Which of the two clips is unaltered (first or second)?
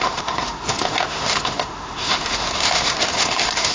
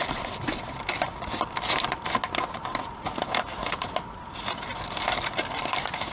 second